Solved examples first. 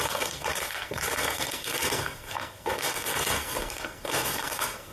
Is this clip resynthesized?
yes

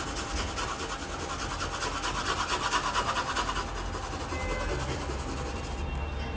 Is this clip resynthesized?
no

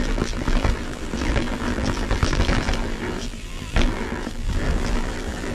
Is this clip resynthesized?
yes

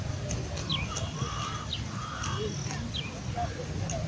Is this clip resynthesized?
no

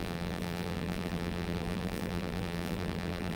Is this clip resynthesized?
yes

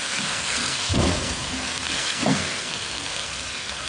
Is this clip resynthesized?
yes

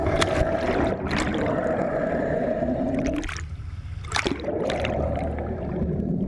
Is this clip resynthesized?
yes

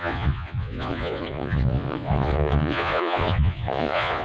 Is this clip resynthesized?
yes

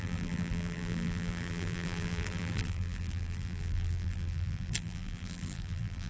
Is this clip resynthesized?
yes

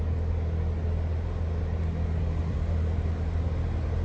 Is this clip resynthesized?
no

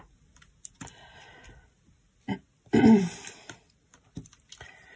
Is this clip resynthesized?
no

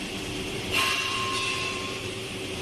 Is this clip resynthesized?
yes